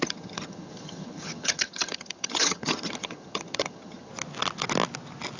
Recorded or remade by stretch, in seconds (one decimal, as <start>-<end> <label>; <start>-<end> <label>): 0.0-4.1 remade; 4.1-5.4 recorded